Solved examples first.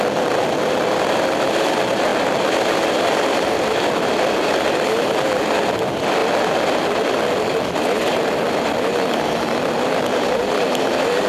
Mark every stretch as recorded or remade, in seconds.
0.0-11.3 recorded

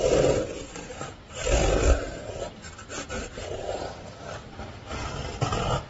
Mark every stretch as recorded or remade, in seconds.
0.0-0.9 recorded; 0.9-1.8 remade; 1.8-5.9 recorded

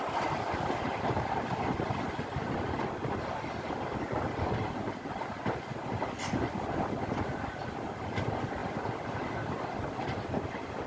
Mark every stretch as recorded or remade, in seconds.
0.0-10.9 recorded

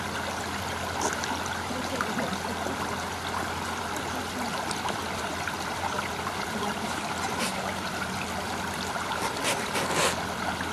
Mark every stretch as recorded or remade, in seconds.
0.0-4.5 recorded; 4.5-9.4 remade; 9.4-10.7 recorded

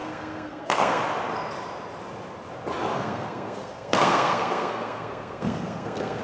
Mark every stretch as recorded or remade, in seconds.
0.0-1.0 remade; 1.0-2.9 recorded; 2.9-6.2 remade